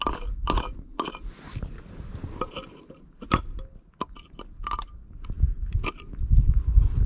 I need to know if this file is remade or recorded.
recorded